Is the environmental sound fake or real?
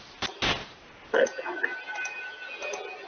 real